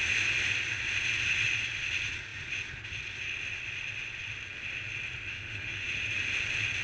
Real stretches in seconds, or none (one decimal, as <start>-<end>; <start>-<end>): 0.0-5.3; 5.9-6.8

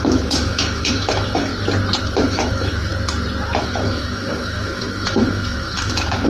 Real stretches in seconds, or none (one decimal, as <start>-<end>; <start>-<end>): 1.5-2.2; 2.9-3.6

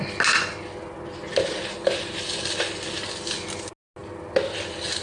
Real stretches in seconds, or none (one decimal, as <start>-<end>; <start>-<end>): 0.0-5.0